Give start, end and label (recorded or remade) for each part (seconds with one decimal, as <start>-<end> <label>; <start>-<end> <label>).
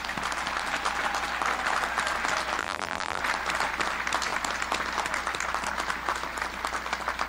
0.0-2.6 recorded; 2.6-3.2 remade; 3.2-7.3 recorded